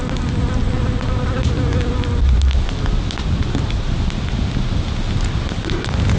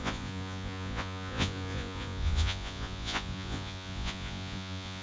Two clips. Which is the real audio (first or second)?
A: first